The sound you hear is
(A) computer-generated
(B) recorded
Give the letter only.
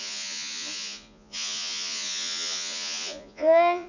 A